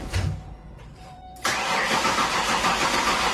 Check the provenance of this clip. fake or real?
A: fake